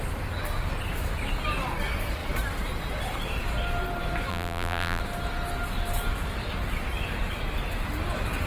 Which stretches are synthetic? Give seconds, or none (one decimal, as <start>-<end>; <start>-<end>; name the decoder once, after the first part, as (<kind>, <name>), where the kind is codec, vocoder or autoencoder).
4.3-5.0 (vocoder, BigVGAN v2)